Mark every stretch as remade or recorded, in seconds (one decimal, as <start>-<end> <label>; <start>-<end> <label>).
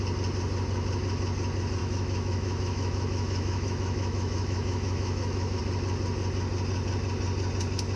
0.0-1.8 recorded; 1.8-5.6 remade; 5.6-8.0 recorded